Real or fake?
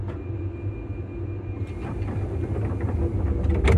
real